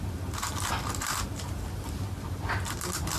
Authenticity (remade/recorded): recorded